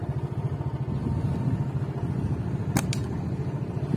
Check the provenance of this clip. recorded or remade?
recorded